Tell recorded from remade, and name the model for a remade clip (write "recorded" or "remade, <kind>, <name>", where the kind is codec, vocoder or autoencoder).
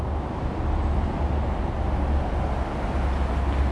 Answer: recorded